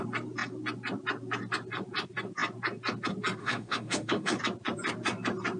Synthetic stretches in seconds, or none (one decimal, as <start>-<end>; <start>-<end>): 3.4-4.4